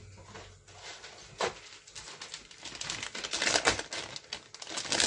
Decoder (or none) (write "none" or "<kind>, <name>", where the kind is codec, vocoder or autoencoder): none